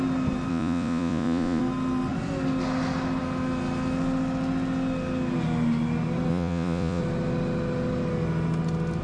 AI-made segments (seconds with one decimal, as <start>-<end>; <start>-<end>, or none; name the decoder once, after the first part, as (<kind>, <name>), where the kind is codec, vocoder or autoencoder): 0.5-1.6 (vocoder, Vocos); 6.3-7.0